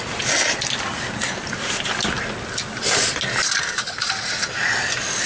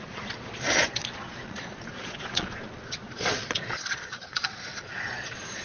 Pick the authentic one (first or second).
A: first